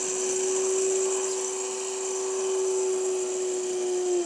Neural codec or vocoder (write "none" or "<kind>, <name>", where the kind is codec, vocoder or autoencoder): none